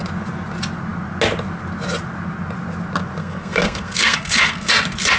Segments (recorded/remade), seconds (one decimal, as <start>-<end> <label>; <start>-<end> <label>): 0.0-3.2 recorded; 3.2-4.7 remade; 4.7-5.2 recorded

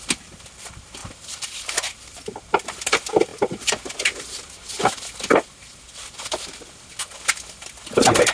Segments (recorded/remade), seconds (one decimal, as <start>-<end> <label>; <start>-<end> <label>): 0.0-1.0 recorded; 1.0-2.2 remade; 2.2-8.3 recorded

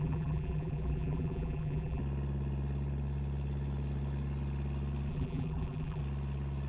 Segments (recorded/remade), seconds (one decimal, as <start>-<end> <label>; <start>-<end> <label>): 0.0-2.0 remade; 2.0-5.1 recorded; 5.1-6.0 remade; 6.0-6.7 recorded

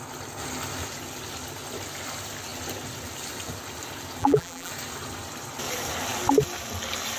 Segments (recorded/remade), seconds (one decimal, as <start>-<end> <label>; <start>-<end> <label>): 0.0-4.2 recorded; 4.2-4.7 remade; 4.7-7.2 recorded

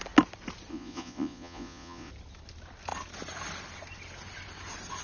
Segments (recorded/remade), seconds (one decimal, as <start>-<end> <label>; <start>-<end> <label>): 0.0-0.7 recorded; 0.7-2.1 remade; 2.1-5.0 recorded